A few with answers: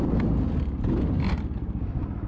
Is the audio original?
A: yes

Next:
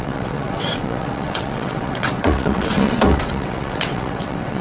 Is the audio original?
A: no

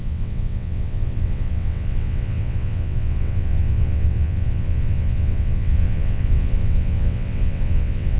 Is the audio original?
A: no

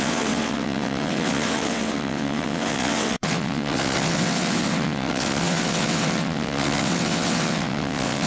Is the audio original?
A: no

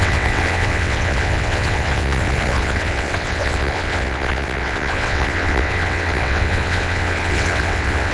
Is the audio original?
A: no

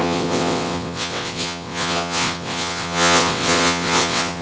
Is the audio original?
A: no